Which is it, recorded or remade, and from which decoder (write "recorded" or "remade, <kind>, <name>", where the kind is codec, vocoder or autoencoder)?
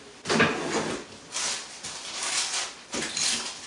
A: recorded